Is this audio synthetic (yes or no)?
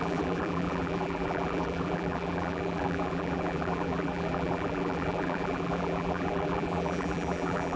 yes